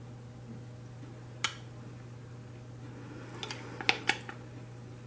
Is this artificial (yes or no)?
no